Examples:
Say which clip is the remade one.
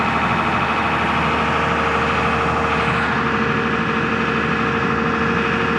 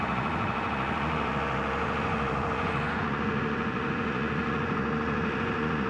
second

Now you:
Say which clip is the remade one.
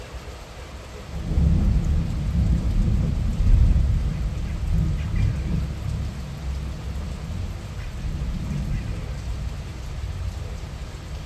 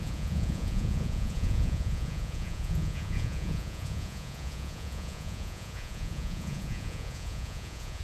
second